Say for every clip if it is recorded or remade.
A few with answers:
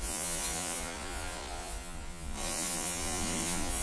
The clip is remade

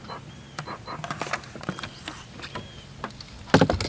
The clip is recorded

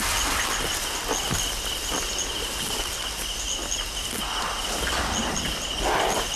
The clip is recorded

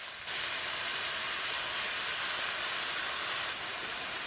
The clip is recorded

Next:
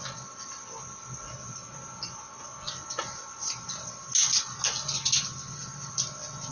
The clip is recorded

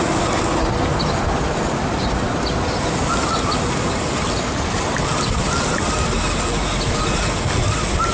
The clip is recorded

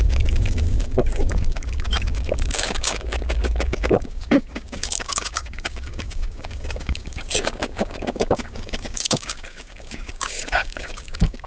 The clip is remade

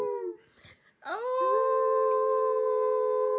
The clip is recorded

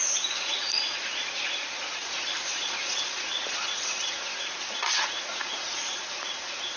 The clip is remade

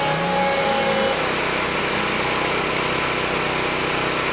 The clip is recorded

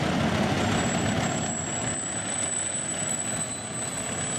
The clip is recorded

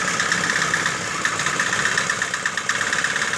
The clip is recorded